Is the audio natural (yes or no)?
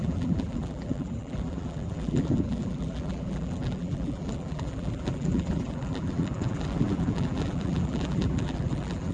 no